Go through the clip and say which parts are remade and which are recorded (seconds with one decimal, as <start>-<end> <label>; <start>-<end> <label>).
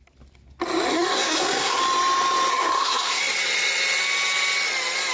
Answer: 0.0-0.9 recorded; 0.9-1.8 remade; 1.8-2.5 recorded; 2.5-3.2 remade; 3.2-5.1 recorded